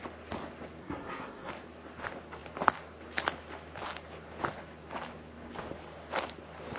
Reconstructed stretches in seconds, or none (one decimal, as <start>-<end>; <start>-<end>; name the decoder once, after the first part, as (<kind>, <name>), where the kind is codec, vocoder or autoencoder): 0.8-1.5 (codec, SNAC)